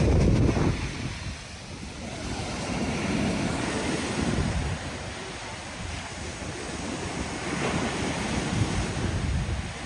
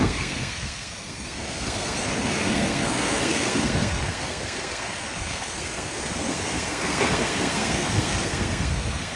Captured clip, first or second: first